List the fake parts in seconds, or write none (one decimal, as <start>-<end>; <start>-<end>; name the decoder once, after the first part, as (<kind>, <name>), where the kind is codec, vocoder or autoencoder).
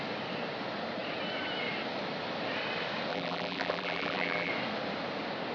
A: 3.1-4.5 (vocoder, BigVGAN v2)